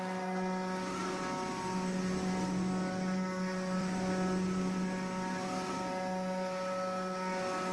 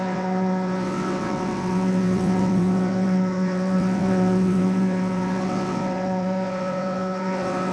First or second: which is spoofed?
second